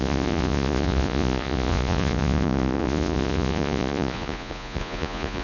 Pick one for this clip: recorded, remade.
remade